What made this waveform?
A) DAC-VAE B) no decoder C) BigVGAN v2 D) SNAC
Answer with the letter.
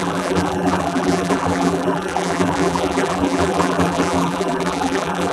C